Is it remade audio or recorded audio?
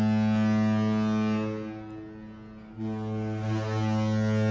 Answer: recorded